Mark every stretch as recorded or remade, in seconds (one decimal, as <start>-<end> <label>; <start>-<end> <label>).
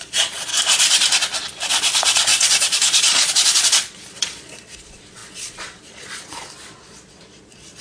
0.0-0.5 remade; 0.5-1.7 recorded; 1.7-7.8 remade